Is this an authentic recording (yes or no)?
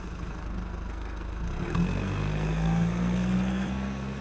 no